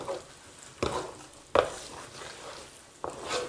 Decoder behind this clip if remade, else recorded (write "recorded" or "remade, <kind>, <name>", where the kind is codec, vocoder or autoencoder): recorded